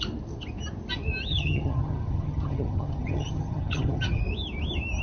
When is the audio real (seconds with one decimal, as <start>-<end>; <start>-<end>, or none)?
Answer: 0.0-1.3; 4.2-5.0